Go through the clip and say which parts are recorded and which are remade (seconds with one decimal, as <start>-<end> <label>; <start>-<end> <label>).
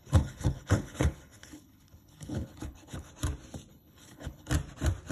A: 0.0-3.1 remade; 3.1-3.7 recorded; 3.7-4.5 remade; 4.5-5.1 recorded